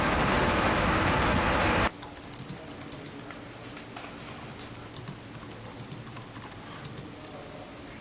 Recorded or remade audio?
recorded